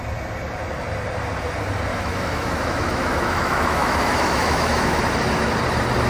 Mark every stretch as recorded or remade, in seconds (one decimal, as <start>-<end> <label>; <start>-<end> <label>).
0.0-1.9 recorded; 1.9-5.0 remade; 5.0-6.1 recorded